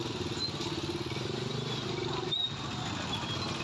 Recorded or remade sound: recorded